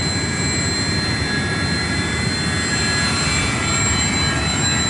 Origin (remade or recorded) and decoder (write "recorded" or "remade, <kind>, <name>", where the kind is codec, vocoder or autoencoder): recorded